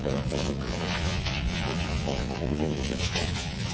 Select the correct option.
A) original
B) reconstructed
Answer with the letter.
B